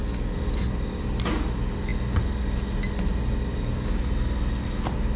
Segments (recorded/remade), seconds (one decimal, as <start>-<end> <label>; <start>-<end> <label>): 0.0-5.2 recorded